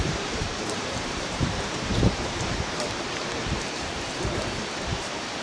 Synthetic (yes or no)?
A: yes